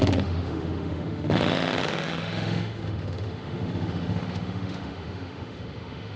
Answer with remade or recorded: remade